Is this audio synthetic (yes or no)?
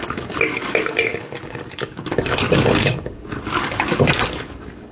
yes